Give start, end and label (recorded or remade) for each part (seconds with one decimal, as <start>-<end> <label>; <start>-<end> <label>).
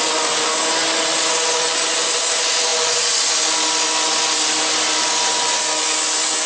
0.0-6.5 recorded